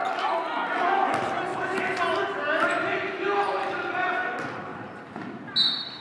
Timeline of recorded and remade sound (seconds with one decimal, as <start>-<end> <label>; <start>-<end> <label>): 0.0-1.5 recorded; 1.5-2.0 remade; 2.0-4.7 recorded; 4.7-5.2 remade; 5.2-6.0 recorded